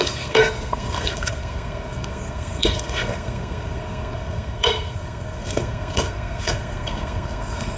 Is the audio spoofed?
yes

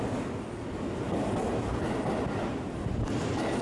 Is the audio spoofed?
no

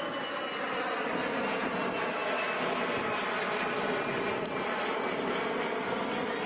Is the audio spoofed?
no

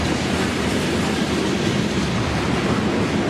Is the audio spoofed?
no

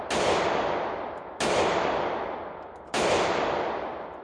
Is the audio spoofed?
no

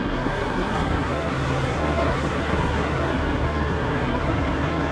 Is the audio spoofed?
yes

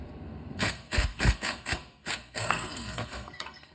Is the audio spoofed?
yes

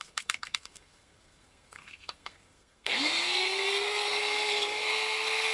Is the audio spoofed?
yes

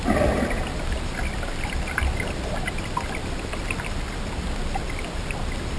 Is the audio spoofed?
no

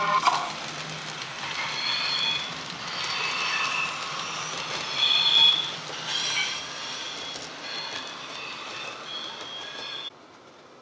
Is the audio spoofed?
no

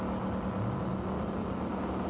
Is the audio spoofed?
no